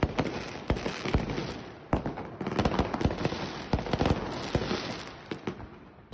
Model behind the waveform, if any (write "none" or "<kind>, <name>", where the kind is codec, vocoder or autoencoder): none